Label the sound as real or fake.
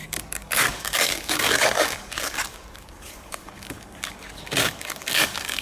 fake